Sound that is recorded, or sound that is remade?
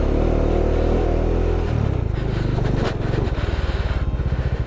recorded